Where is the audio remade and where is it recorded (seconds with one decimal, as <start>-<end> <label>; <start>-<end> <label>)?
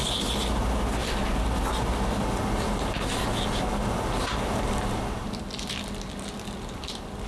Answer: 0.0-7.3 recorded